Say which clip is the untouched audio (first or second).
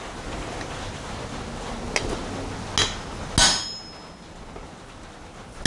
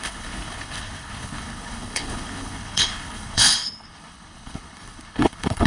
first